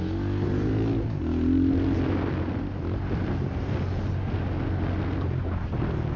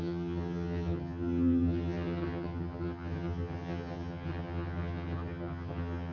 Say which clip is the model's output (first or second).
second